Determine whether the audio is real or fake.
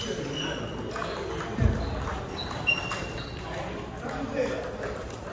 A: real